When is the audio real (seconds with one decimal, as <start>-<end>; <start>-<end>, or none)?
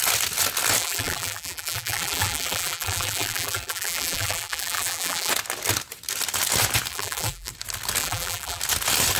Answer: 0.0-0.8; 5.3-6.9; 7.5-8.0; 8.6-9.2